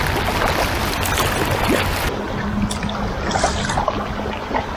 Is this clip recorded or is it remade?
recorded